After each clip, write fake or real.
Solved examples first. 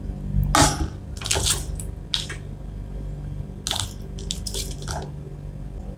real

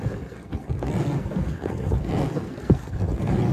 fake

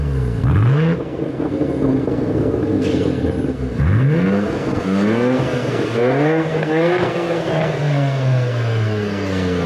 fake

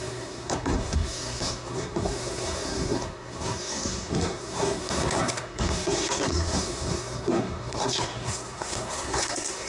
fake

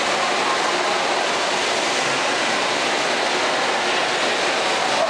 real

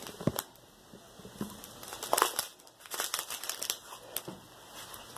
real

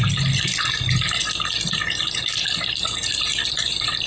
real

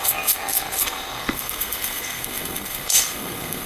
fake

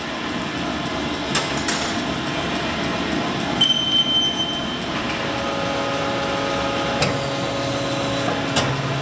real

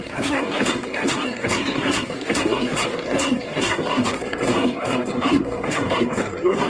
fake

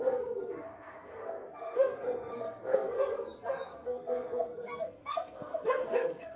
fake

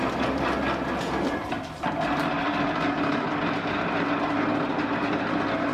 real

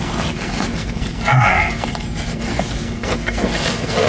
fake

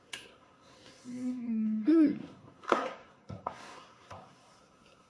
fake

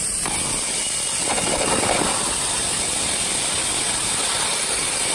real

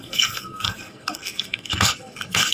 fake